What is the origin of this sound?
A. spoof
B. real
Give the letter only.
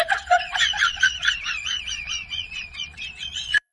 A